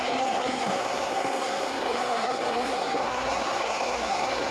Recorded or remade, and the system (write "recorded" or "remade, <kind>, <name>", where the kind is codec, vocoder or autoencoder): remade, codec, SNAC